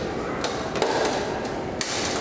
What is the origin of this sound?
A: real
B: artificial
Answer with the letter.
A